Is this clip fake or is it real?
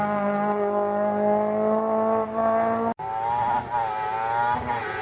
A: real